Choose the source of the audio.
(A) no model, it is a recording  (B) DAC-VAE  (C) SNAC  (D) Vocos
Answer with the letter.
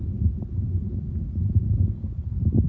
A